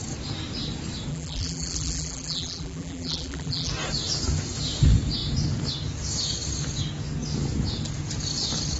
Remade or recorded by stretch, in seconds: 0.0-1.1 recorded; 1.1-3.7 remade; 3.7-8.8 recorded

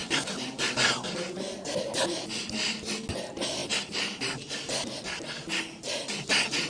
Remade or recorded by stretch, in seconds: 0.0-3.6 recorded; 3.6-5.0 remade; 5.0-6.7 recorded

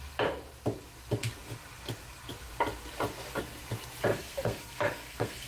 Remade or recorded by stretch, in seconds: 0.0-4.1 recorded; 4.1-5.5 remade

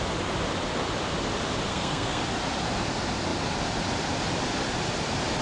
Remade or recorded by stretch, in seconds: 0.0-1.7 recorded; 1.7-2.2 remade; 2.2-5.4 recorded